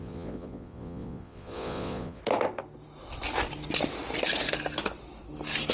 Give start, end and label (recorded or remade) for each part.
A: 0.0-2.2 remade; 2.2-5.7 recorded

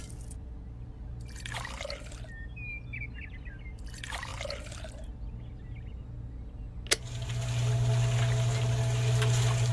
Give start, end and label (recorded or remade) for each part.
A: 0.0-9.7 recorded

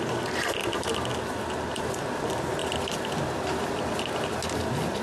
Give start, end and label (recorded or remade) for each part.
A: 0.0-5.0 recorded

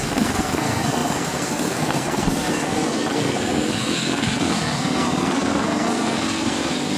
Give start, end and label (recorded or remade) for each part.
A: 0.0-7.0 remade

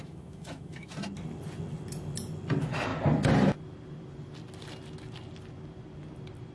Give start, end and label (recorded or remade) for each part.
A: 0.0-0.9 remade; 0.9-6.5 recorded